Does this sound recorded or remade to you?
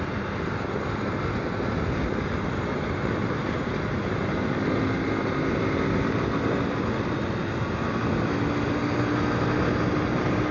recorded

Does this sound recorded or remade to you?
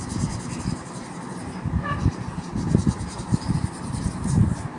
remade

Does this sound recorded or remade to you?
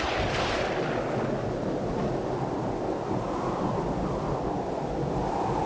recorded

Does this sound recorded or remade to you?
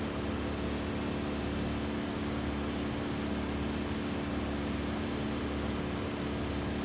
recorded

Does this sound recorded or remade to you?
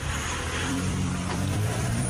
remade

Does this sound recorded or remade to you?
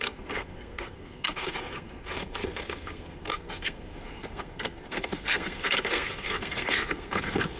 remade